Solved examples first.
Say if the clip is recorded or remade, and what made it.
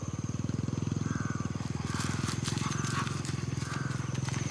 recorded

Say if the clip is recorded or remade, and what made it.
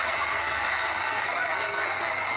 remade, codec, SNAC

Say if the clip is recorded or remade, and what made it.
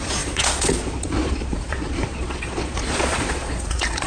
remade, vocoder, Vocos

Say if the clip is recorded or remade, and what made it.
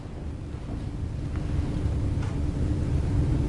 recorded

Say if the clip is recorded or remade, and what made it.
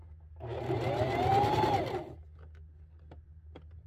recorded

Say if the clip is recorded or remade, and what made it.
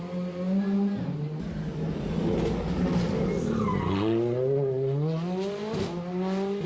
recorded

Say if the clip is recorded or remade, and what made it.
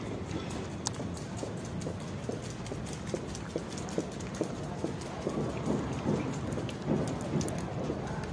recorded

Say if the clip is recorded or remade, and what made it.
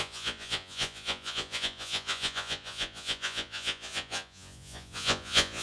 remade, vocoder, Vocos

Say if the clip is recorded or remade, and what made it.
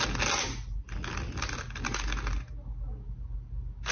recorded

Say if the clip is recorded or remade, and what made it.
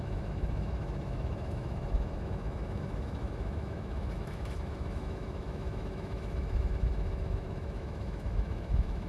remade, autoencoder, DAC-VAE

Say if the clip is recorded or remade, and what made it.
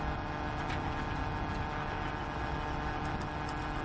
recorded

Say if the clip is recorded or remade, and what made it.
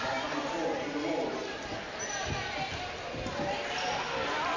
recorded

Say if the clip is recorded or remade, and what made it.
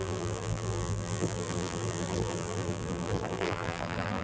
remade, vocoder, BigVGAN v2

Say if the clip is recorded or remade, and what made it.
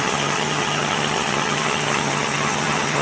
remade, vocoder, HiFi-GAN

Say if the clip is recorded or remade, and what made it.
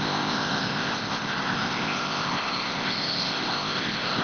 remade, codec, ZipCodec